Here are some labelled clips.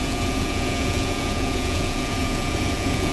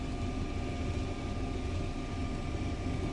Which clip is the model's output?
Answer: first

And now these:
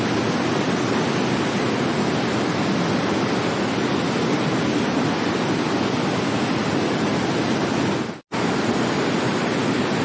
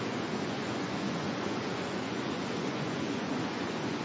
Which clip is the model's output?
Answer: second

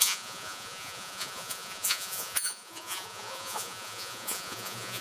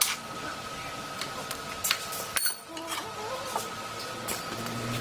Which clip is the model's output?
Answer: first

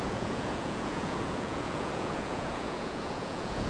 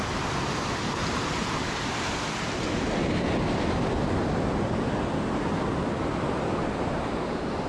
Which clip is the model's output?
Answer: first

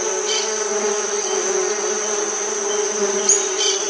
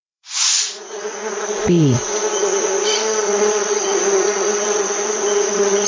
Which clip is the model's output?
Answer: second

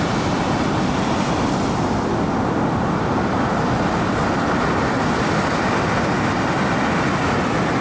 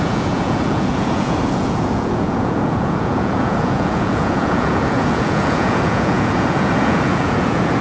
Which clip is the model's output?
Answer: second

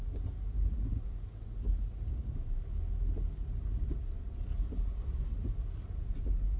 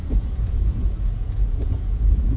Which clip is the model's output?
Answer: second